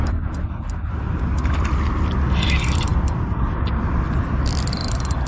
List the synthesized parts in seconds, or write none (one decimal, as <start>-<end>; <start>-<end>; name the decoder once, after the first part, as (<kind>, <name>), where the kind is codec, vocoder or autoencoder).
none